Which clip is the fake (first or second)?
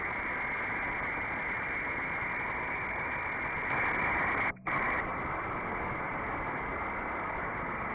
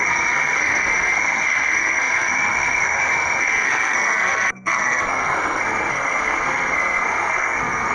second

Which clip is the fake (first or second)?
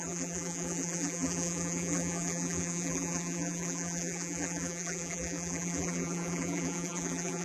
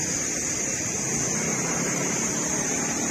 first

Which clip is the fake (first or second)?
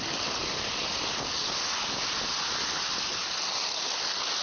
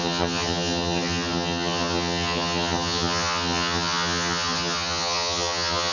second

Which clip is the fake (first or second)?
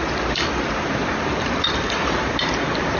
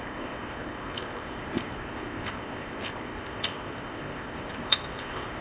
second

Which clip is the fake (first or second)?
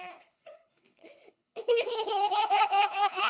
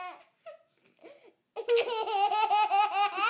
first